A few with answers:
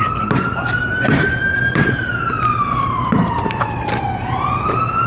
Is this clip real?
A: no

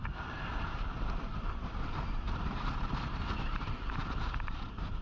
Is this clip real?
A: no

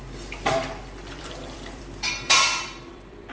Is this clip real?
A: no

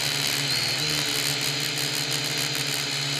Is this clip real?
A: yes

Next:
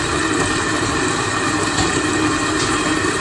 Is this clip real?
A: no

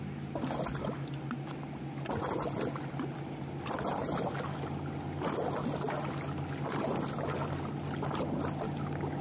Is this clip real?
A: yes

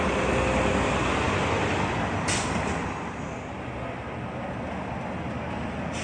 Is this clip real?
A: yes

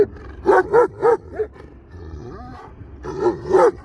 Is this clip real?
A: yes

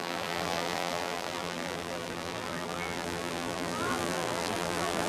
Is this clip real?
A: no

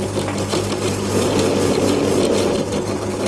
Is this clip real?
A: yes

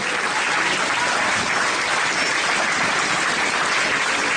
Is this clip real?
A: no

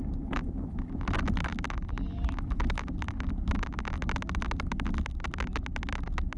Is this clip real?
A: no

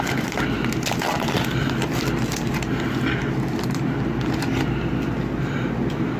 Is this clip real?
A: no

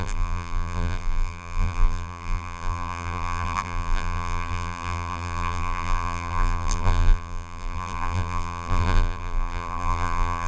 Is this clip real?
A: no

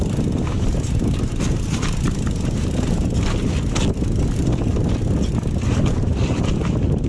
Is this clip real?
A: yes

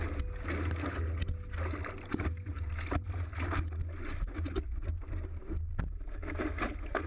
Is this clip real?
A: yes